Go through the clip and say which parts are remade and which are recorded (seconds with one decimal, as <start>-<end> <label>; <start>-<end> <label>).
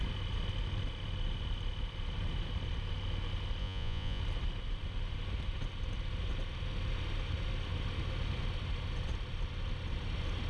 0.0-3.6 recorded; 3.6-4.2 remade; 4.2-10.5 recorded